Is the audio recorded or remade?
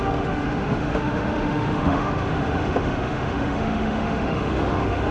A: remade